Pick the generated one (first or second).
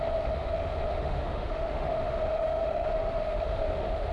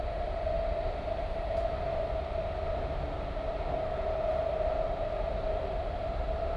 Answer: first